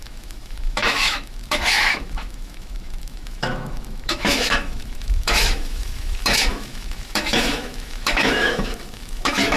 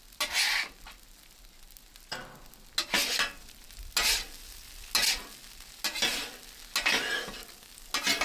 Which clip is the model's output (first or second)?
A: first